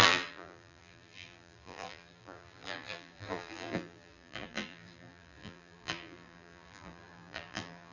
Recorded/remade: remade